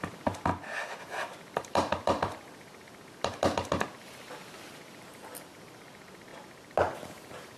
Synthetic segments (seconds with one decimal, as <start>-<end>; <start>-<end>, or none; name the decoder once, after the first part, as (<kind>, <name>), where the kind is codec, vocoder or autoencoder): 0.0-0.5 (vocoder, BigVGAN v2); 1.0-6.3